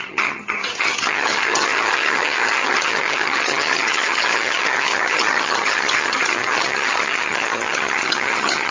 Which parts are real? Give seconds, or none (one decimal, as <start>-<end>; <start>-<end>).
none